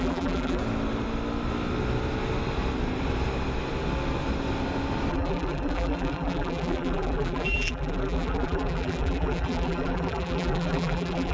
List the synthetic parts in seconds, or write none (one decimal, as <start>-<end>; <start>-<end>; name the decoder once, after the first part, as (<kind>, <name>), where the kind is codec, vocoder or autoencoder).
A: 0.0-0.6 (vocoder, BigVGAN v2); 5.1-11.3